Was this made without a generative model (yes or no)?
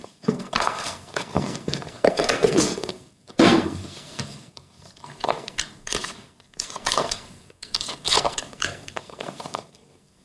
no